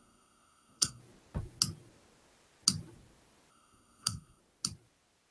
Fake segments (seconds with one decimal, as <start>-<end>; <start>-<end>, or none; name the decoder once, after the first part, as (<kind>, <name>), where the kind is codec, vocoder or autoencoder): 0.0-1.0 (codec, SNAC); 3.5-4.4